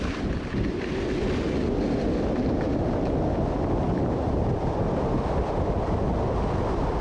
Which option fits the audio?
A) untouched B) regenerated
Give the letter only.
A